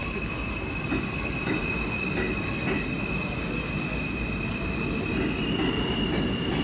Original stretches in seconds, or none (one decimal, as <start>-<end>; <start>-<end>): 0.0-6.6